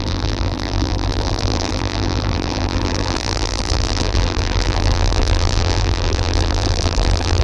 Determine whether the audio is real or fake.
fake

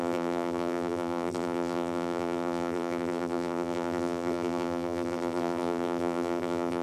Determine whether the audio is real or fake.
fake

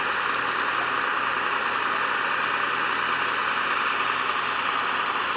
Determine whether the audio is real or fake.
real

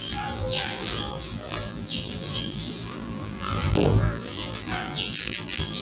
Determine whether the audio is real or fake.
fake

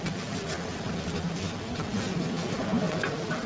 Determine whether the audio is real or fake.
fake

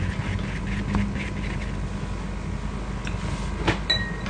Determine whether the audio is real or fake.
real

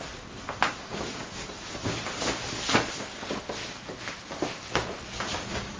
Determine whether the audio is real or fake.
real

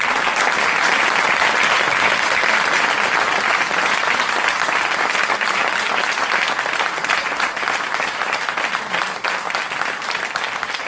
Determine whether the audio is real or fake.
real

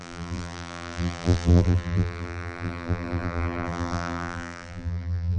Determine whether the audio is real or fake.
fake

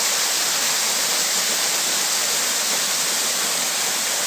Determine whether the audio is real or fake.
real